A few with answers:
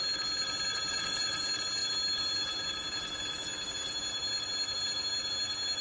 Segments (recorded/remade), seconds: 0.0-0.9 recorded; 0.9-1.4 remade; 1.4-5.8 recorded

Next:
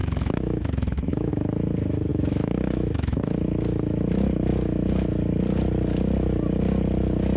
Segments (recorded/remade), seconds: 0.0-1.3 remade; 1.3-2.1 recorded; 2.1-3.2 remade; 3.2-7.4 recorded

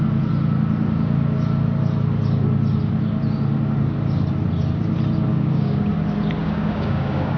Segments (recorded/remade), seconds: 0.0-5.3 recorded; 5.3-5.9 remade; 5.9-6.4 recorded; 6.4-7.4 remade